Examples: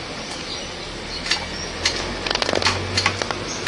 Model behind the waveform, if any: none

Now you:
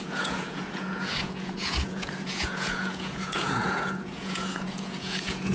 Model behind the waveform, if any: vocoder, Vocos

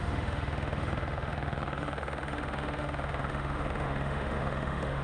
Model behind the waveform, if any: autoencoder, DAC-VAE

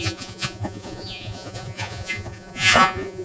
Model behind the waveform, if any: vocoder, Vocos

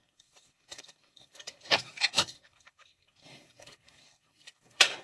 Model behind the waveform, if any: codec, SNAC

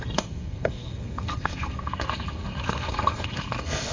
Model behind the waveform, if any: codec, SNAC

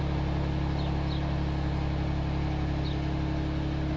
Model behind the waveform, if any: none